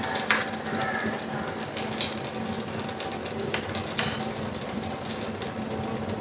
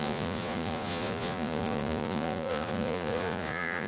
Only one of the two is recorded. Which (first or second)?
first